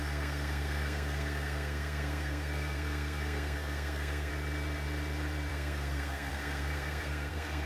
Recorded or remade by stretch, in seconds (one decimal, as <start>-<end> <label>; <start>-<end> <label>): 0.0-4.3 remade; 4.3-5.5 recorded; 5.5-7.7 remade